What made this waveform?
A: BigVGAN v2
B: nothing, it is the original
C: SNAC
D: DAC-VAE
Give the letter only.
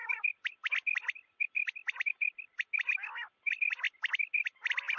B